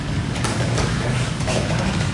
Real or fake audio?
fake